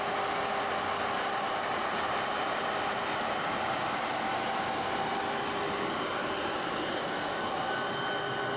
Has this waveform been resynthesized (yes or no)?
no